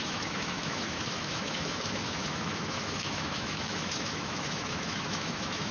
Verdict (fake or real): fake